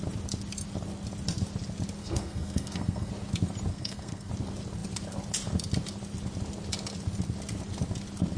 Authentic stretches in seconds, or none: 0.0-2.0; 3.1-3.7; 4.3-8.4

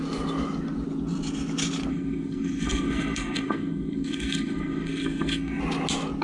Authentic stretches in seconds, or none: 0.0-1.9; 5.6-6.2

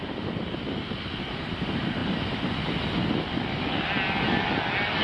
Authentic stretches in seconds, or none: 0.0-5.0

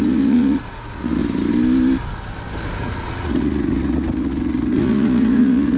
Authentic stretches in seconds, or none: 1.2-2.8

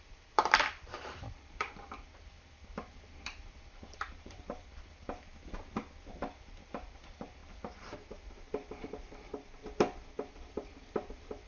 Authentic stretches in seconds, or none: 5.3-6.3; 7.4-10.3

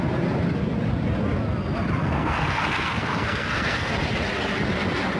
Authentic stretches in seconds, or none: 0.0-2.0; 3.9-5.2

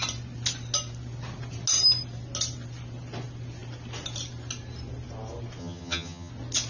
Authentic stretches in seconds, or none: 0.0-5.6; 6.3-6.7

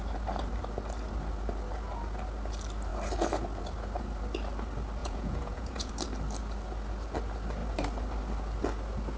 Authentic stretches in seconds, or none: 0.0-5.0; 5.9-9.2